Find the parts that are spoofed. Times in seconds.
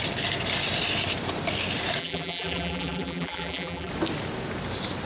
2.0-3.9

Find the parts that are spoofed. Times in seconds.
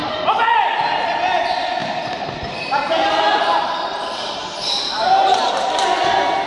1.8-5.7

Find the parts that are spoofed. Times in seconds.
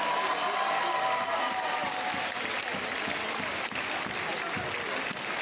none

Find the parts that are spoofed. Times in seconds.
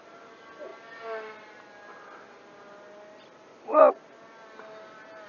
none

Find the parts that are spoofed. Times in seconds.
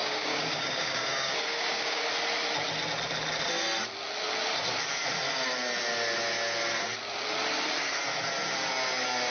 0.0-2.1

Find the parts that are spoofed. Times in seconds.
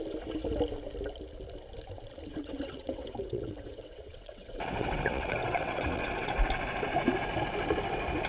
2.3-6.3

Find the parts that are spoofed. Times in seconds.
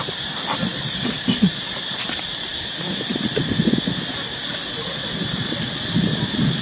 none